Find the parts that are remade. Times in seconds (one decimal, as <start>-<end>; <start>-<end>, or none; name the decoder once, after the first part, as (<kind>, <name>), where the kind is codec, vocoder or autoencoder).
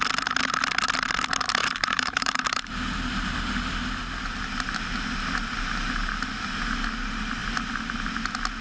1.6-2.7 (vocoder, BigVGAN v2)